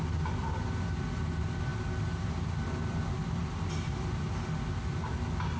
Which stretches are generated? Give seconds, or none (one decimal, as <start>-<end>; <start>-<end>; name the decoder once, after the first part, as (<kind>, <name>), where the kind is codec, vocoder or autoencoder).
none

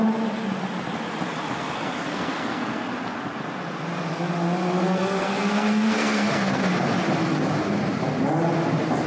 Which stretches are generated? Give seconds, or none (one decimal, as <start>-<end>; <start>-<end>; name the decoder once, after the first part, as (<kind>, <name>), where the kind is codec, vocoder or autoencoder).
1.5-2.8 (codec, SNAC); 4.8-6.6

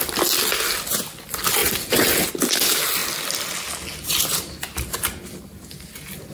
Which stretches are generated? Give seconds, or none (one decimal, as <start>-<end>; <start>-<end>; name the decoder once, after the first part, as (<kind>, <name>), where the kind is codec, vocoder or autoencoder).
none

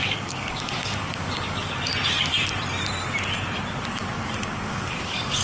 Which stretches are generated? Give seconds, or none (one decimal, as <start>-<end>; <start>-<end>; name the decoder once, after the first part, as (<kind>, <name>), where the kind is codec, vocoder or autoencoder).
0.0-1.9 (codec, DAC); 3.8-5.4